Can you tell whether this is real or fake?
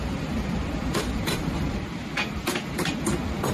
fake